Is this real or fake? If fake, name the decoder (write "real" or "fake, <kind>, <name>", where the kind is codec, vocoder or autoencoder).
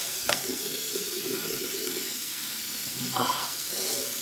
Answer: fake, codec, SNAC